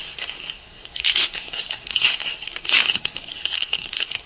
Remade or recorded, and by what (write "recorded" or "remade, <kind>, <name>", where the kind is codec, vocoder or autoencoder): remade, codec, SNAC